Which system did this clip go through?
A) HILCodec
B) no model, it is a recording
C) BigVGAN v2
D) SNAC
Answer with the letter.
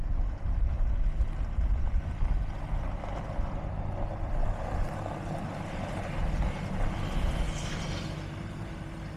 B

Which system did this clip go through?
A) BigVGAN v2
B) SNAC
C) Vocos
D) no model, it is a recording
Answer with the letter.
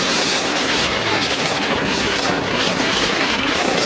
B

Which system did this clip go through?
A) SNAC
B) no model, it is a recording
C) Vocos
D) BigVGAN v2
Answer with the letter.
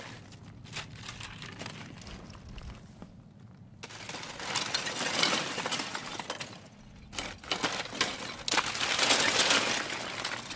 B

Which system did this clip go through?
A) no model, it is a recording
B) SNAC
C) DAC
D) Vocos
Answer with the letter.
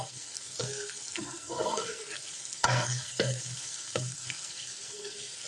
B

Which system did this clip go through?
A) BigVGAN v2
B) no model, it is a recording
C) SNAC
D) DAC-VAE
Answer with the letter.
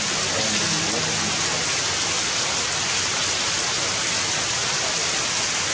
B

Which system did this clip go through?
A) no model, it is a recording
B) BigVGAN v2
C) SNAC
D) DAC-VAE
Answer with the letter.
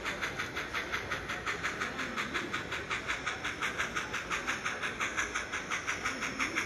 A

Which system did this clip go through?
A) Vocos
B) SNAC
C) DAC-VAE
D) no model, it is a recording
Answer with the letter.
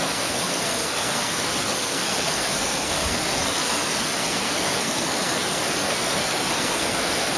B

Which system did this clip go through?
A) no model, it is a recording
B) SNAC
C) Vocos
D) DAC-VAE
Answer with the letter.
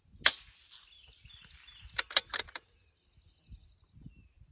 A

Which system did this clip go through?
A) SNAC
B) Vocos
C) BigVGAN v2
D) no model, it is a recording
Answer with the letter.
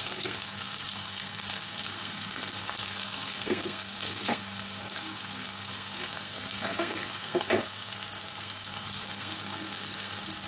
A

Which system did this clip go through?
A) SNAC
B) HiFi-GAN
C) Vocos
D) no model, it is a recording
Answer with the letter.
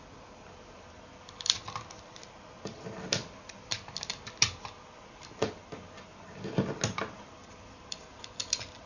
D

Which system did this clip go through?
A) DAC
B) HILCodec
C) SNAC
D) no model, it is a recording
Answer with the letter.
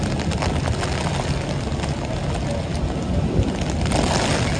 D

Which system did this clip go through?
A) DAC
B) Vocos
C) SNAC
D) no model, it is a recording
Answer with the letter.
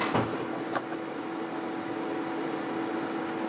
D